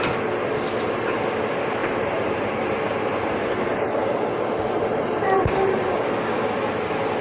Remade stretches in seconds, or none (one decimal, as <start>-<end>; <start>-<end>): 1.8-6.1